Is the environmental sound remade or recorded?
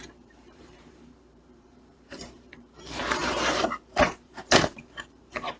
remade